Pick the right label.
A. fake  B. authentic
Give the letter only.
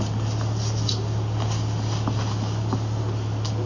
B